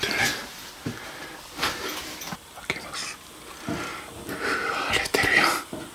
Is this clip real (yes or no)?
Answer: yes